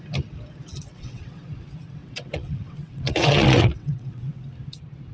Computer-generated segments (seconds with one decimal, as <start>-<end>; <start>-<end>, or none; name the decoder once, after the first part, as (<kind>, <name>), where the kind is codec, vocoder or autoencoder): 0.9-1.4 (vocoder, WaveNeXt); 2.0-4.5